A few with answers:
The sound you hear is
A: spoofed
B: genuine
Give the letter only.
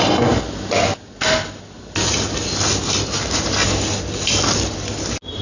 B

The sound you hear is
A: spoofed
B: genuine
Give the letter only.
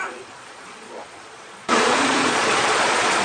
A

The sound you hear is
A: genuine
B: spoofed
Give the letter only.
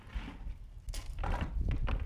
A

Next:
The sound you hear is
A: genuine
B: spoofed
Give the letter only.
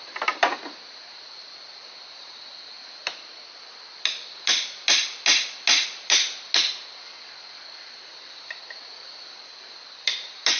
A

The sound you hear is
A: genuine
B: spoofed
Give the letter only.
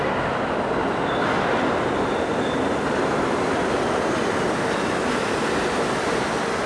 A